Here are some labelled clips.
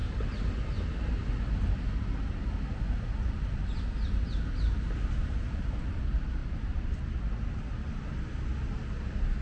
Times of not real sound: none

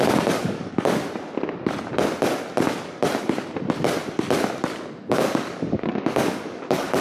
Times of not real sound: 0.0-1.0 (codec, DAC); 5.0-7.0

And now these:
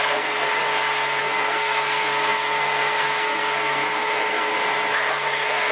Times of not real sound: 0.0-0.6 (codec, SNAC); 1.2-4.5; 5.1-5.7

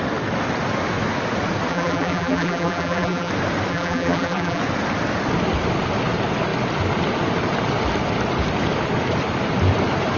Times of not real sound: 1.7-3.3 (vocoder, BigVGAN v2); 3.7-4.6

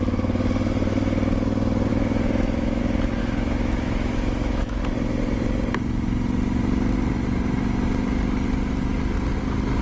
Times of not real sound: 1.9-2.8 (autoencoder, DAC-VAE); 3.2-4.8

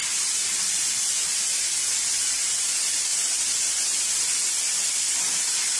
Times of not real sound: 0.0-2.0 (vocoder, BigVGAN v2); 2.5-3.1; 5.2-5.8